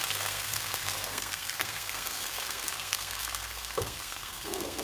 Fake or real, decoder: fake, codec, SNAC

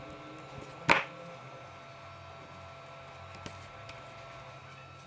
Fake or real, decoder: real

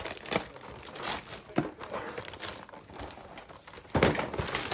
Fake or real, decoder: real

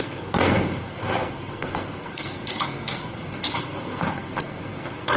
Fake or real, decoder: fake, codec, SNAC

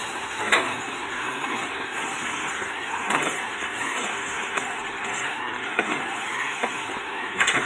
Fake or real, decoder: fake, codec, SNAC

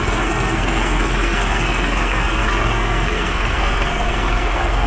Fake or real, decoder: fake, codec, SNAC